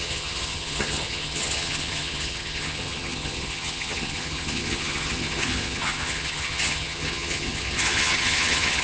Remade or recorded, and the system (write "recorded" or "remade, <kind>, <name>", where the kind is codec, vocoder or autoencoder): remade, vocoder, HiFi-GAN